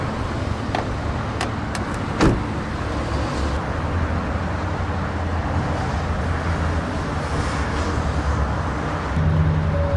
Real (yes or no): yes